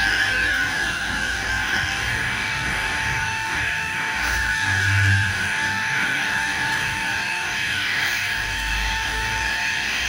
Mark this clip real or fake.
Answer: fake